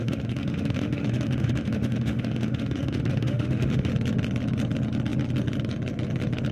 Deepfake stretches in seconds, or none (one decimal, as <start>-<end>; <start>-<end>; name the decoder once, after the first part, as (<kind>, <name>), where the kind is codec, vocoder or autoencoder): 0.0-3.9 (autoencoder, DAC-VAE)